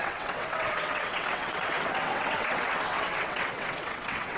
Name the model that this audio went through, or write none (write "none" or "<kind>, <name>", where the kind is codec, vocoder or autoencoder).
vocoder, WaveNeXt